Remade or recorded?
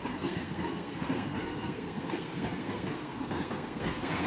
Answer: remade